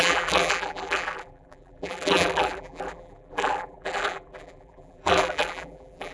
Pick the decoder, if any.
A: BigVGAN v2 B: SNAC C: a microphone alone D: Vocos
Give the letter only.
A